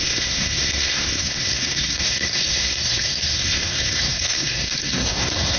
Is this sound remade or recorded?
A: remade